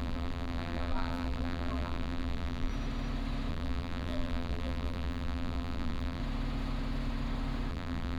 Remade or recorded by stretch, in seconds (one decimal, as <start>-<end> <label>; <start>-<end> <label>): 0.0-2.7 remade; 2.7-3.5 recorded; 3.5-6.2 remade; 6.2-7.7 recorded; 7.7-8.2 remade